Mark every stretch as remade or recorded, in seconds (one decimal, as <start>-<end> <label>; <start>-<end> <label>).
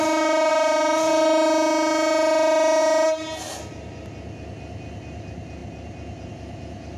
0.0-7.0 recorded